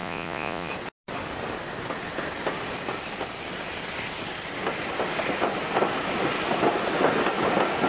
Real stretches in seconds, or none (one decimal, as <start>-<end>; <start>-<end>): 0.7-7.9